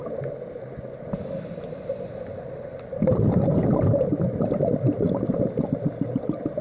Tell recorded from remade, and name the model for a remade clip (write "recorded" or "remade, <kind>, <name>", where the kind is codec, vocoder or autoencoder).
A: recorded